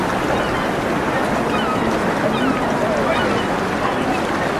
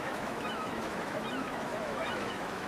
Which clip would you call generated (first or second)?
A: second